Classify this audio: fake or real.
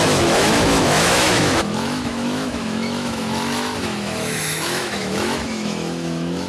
fake